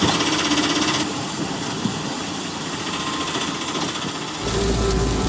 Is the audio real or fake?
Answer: real